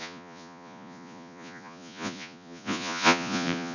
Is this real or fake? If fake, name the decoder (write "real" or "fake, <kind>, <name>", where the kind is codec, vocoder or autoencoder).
fake, vocoder, Vocos